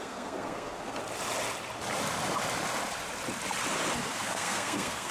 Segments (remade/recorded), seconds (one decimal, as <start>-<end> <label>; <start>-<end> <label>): 0.0-1.0 remade; 1.0-4.1 recorded; 4.1-5.1 remade